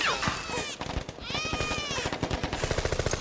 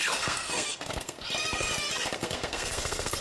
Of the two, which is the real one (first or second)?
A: first